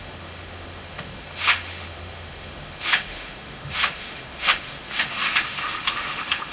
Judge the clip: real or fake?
fake